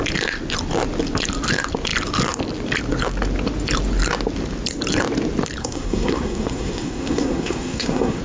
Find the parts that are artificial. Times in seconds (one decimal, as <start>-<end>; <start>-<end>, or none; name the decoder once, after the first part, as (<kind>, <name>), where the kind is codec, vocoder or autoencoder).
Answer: 5.6-8.2 (codec, SNAC)